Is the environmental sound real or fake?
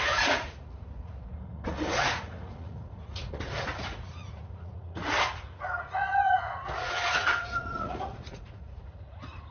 fake